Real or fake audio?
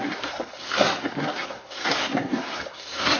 fake